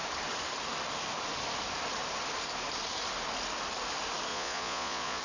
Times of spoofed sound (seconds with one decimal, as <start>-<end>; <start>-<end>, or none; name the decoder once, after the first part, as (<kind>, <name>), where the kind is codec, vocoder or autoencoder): 4.3-5.2 (vocoder, Vocos)